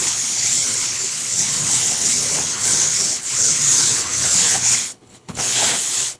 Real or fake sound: fake